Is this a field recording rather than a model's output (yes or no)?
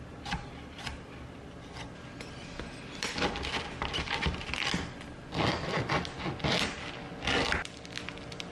yes